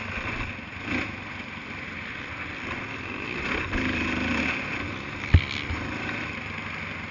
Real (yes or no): yes